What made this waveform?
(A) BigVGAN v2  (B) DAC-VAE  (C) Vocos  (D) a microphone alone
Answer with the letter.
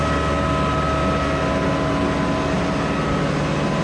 D